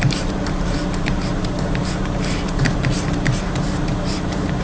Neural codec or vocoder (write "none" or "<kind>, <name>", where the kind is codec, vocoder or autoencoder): vocoder, BigVGAN v2